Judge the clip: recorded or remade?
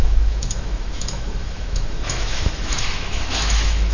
remade